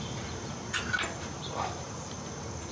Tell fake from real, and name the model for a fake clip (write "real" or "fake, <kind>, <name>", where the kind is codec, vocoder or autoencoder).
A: fake, vocoder, BigVGAN v2